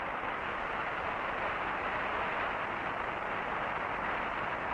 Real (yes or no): yes